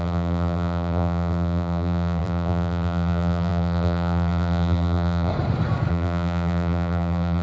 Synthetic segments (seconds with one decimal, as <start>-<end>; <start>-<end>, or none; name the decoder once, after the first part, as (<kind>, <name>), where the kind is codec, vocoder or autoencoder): 0.0-5.3 (vocoder, BigVGAN v2); 5.9-7.4